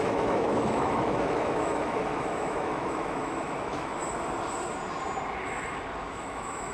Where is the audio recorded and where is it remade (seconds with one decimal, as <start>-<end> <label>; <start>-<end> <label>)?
0.0-4.0 remade; 4.0-6.1 recorded; 6.1-6.7 remade